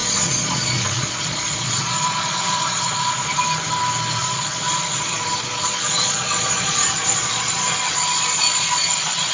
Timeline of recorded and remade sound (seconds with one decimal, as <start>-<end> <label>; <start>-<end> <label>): 0.0-3.4 remade; 3.4-4.2 recorded; 4.2-9.3 remade